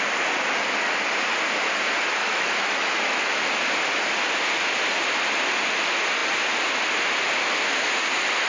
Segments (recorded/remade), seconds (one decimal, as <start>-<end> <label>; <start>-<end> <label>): 0.0-2.2 recorded; 2.2-3.4 remade; 3.4-8.5 recorded